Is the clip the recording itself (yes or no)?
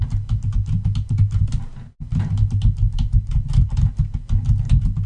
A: yes